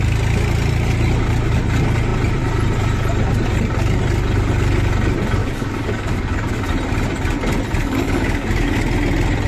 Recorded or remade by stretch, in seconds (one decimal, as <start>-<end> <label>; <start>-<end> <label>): 0.0-5.4 recorded; 5.4-6.7 remade; 6.7-7.8 recorded; 7.8-8.8 remade; 8.8-9.5 recorded